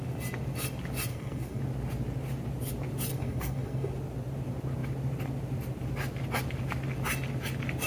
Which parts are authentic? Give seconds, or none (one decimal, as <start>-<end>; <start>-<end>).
0.0-1.1; 1.6-3.1; 3.9-7.9